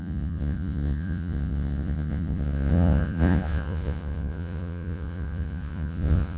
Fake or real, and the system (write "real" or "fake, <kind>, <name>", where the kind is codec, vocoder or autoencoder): fake, vocoder, Vocos